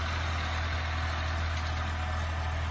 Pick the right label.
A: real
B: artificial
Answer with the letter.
A